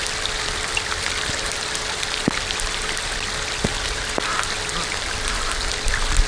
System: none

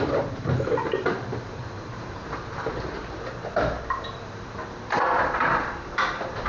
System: vocoder, BigVGAN v2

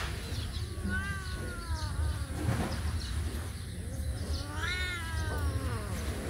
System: none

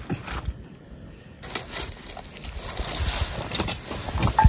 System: none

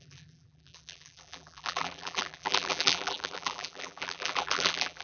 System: vocoder, BigVGAN v2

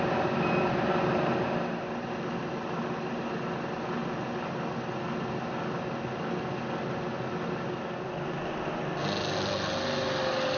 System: none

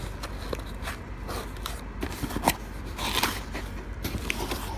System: none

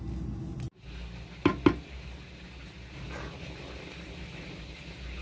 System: none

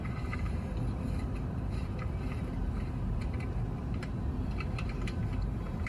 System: vocoder, BigVGAN v2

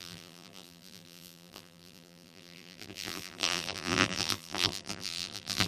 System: vocoder, BigVGAN v2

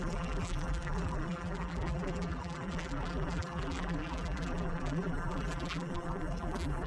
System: vocoder, BigVGAN v2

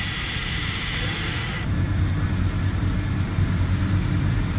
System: none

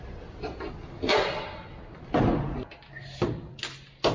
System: none